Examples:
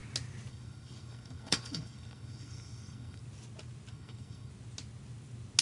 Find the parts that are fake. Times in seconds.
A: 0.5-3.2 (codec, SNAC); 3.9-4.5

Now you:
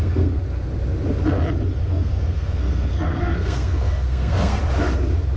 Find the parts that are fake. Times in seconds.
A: 0.0-0.4 (codec, SNAC); 1.8-4.6

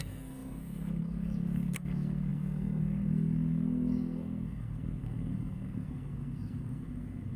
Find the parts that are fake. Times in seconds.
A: 0.0-7.4 (codec, SNAC)

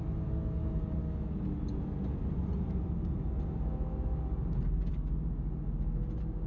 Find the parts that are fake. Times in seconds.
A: none

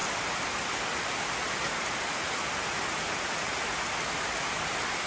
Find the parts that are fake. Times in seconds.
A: none